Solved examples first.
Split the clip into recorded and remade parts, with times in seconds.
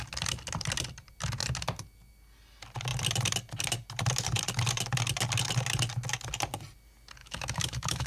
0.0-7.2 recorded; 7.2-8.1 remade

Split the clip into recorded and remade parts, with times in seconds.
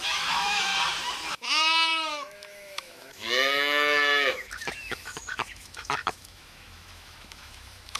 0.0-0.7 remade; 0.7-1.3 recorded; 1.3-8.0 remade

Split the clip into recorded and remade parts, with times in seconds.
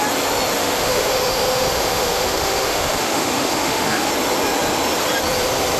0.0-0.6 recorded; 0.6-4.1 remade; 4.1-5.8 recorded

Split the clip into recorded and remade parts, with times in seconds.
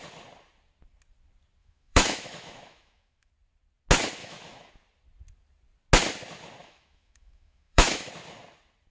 0.0-1.6 recorded; 1.6-3.3 remade; 3.3-4.2 recorded; 4.2-4.7 remade; 4.7-6.6 recorded; 6.6-8.1 remade; 8.1-8.9 recorded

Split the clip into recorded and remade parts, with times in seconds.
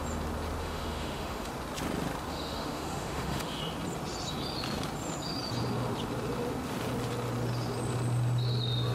0.0-0.6 recorded; 0.6-1.5 remade; 1.5-2.3 recorded; 2.3-3.6 remade; 3.6-8.9 recorded